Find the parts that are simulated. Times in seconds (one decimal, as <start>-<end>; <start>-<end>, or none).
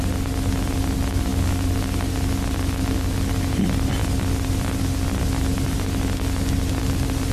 none